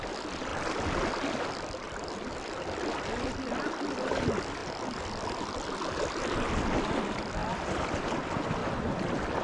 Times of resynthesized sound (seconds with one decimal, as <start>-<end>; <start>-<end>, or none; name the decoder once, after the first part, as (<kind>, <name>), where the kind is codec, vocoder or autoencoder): 0.0-0.5 (vocoder, BigVGAN v2); 1.3-7.4; 8.0-8.6